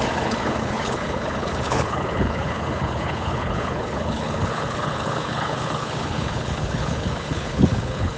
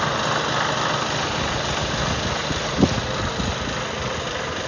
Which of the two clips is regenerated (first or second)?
first